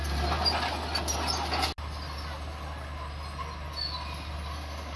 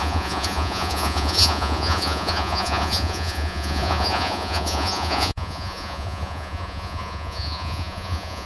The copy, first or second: second